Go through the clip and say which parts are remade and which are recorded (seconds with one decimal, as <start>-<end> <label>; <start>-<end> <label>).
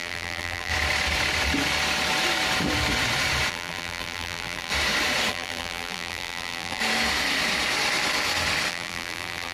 0.0-0.7 remade; 0.7-3.5 recorded; 3.5-4.7 remade; 4.7-5.3 recorded; 5.3-6.8 remade; 6.8-8.7 recorded; 8.7-9.5 remade